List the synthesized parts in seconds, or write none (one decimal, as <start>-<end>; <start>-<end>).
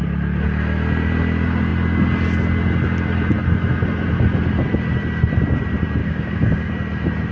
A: 6.0-6.7